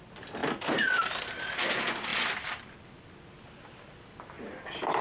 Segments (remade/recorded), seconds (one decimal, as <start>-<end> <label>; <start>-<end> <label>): 0.0-5.0 recorded